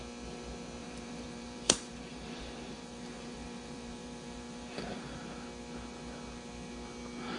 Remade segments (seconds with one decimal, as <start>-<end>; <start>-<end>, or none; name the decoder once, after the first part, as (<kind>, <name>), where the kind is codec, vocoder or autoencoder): 0.8-5.2 (vocoder, BigVGAN v2)